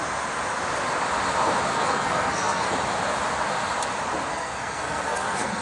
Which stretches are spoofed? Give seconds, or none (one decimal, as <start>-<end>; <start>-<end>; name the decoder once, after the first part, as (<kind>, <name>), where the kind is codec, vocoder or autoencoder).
1.7-2.7 (codec, SNAC); 4.3-5.6